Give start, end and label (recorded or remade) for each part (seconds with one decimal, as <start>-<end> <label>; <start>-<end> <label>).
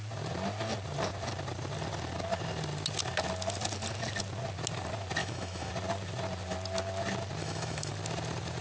0.0-5.2 recorded; 5.2-5.7 remade; 5.7-7.4 recorded; 7.4-7.9 remade; 7.9-8.6 recorded